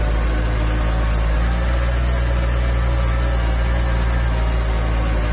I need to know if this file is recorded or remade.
recorded